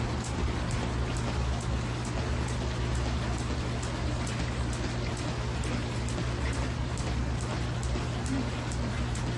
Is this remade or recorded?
recorded